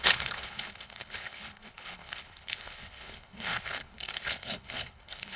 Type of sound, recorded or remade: remade